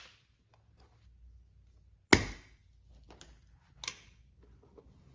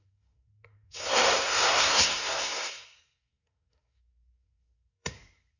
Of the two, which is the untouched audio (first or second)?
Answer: first